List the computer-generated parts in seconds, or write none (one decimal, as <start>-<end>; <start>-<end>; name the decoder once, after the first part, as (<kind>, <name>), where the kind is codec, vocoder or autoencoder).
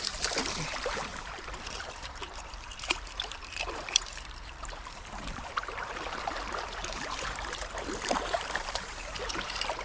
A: 0.0-9.8 (vocoder, BigVGAN v2)